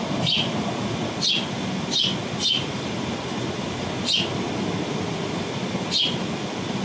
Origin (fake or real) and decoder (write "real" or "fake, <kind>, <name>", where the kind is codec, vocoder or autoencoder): real